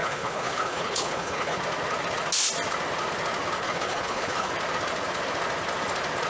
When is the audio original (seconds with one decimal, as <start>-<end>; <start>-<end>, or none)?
1.6-3.6; 4.5-6.3